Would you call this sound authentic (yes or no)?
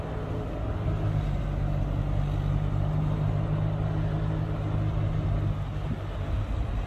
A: yes